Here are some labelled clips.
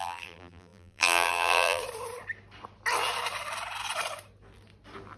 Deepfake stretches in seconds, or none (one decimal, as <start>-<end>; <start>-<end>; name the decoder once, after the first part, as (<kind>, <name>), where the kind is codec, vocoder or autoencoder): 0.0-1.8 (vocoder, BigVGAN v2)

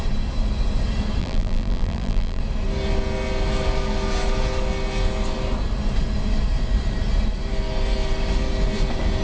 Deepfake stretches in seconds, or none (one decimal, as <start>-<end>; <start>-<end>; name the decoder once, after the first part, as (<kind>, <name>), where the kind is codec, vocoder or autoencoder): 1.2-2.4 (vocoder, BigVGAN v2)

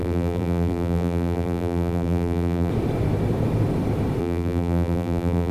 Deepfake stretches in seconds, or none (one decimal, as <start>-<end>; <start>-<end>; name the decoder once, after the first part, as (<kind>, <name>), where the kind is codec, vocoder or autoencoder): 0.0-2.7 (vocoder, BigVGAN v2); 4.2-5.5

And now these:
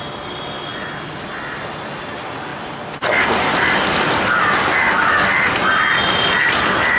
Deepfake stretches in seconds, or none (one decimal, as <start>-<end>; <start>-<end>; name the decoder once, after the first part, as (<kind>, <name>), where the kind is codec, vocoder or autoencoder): none